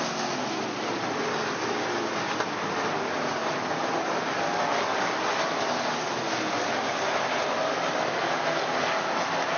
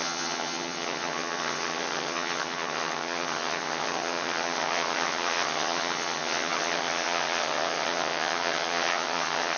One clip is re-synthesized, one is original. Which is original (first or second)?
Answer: first